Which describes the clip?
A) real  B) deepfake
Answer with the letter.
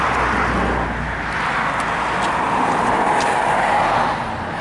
A